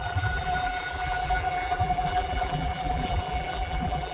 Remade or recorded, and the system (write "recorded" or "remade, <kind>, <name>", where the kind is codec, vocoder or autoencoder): remade, vocoder, BigVGAN v2